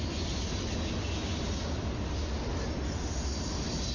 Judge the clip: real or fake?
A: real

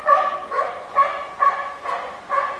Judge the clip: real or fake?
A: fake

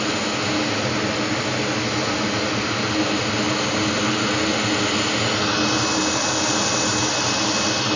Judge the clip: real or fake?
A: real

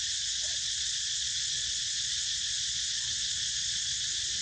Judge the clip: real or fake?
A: fake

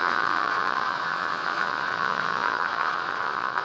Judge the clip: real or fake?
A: fake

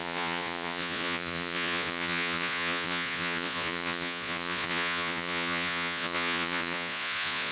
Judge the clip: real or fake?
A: fake